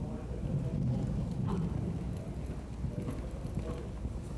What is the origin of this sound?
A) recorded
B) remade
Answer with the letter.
A